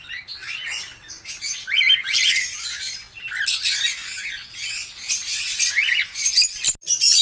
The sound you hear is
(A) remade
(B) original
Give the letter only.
B